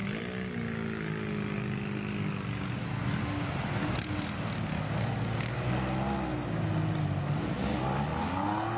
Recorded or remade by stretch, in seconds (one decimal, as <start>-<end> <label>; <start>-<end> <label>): 0.0-8.8 recorded